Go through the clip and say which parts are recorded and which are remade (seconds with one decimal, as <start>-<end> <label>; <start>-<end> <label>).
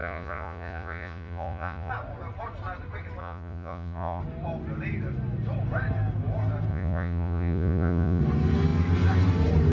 0.0-1.9 remade; 1.9-3.2 recorded; 3.2-4.2 remade; 4.2-6.7 recorded; 6.7-8.2 remade; 8.2-9.7 recorded